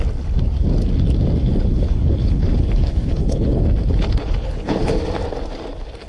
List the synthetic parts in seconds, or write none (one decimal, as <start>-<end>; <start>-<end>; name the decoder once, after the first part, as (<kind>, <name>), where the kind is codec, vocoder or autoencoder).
1.4-3.6 (codec, HILCodec); 4.2-4.9